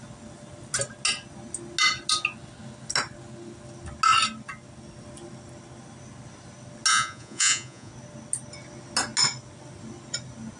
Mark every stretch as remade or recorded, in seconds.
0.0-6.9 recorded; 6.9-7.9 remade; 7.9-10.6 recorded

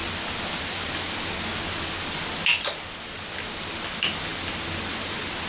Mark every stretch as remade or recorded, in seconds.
0.0-5.5 recorded

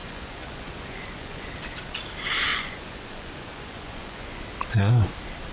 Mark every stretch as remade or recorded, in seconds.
0.0-1.5 remade; 1.5-2.5 recorded; 2.5-4.4 remade; 4.4-5.5 recorded

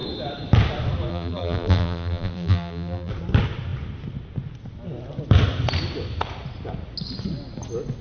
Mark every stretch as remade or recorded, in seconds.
0.0-1.1 recorded; 1.1-3.1 remade; 3.1-8.0 recorded

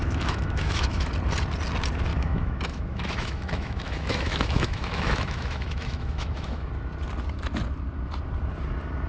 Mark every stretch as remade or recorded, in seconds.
0.0-1.1 remade; 1.1-2.1 recorded; 2.1-6.7 remade; 6.7-9.1 recorded

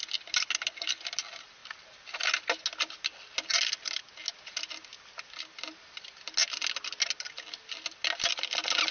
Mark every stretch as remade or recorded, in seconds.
0.0-8.9 recorded

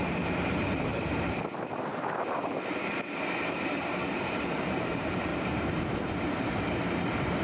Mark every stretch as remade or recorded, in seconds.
0.0-0.9 remade; 0.9-3.5 recorded; 3.5-7.4 remade

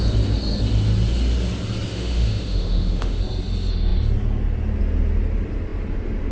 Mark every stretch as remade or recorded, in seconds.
0.0-1.9 recorded; 1.9-3.2 remade; 3.2-6.3 recorded